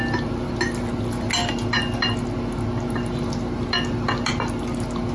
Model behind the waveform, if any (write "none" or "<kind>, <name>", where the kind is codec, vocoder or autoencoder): none